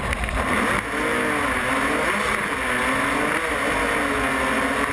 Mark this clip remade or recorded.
recorded